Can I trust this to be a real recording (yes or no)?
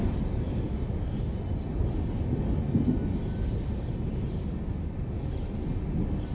yes